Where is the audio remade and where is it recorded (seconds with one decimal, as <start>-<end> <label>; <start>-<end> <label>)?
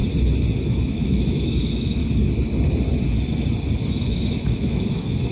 0.0-0.6 recorded; 0.6-2.0 remade; 2.0-3.9 recorded; 3.9-5.3 remade